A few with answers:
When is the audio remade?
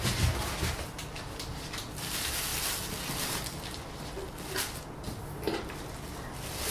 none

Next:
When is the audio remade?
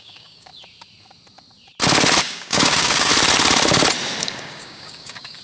0.0-0.5 (codec, DAC); 2.2-3.1; 4.2-5.4